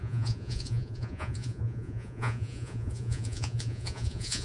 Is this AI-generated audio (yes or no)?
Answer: yes